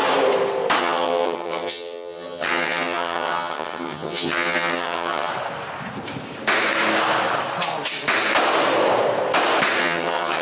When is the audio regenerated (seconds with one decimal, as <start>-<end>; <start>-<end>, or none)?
0.8-5.3; 9.8-10.4